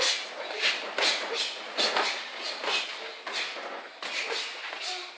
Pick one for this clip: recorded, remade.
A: recorded